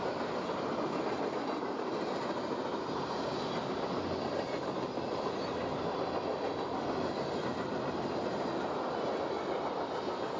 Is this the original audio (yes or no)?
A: yes